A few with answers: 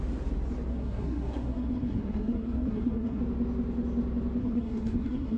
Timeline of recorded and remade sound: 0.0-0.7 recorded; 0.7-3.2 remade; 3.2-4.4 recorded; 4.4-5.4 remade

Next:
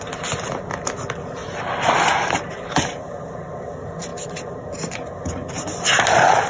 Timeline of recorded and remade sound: 0.0-6.5 recorded

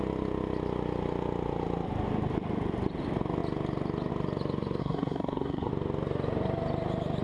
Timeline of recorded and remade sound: 0.0-4.8 recorded; 4.8-5.7 remade; 5.7-7.2 recorded

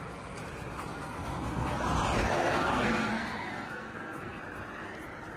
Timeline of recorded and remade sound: 0.0-0.9 recorded; 0.9-1.8 remade; 1.8-2.2 recorded; 2.2-4.4 remade; 4.4-5.4 recorded

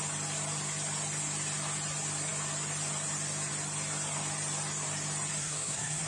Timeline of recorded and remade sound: 0.0-5.4 recorded; 5.4-6.1 remade

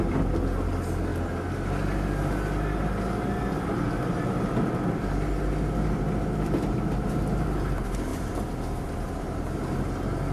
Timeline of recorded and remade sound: 0.0-10.3 recorded